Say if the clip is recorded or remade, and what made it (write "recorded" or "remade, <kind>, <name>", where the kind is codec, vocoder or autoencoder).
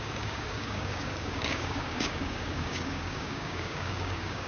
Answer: remade, codec, DAC